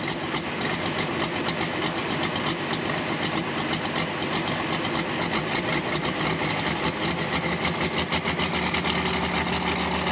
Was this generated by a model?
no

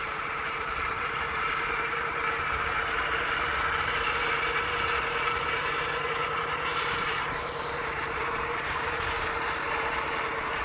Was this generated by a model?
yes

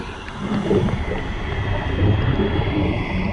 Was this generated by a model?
no